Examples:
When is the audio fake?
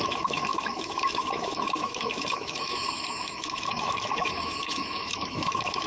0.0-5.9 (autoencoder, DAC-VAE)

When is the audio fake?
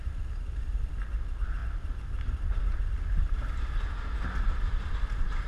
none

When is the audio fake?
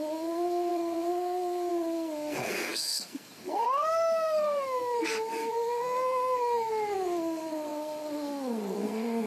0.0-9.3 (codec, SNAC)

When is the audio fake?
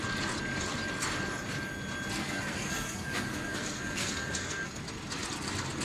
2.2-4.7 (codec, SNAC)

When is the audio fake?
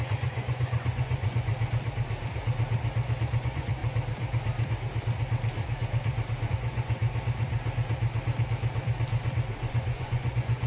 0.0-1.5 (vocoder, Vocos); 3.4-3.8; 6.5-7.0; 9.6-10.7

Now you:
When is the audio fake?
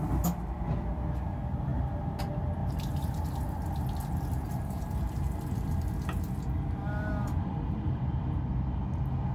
2.6-5.9 (vocoder, BigVGAN v2); 7.2-8.0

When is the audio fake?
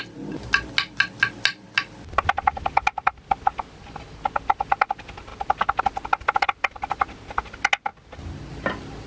none